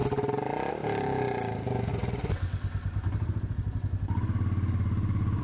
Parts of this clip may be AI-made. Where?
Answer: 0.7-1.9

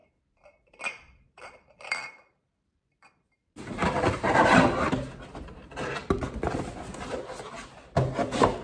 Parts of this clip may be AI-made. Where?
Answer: 0.0-4.8; 5.6-6.2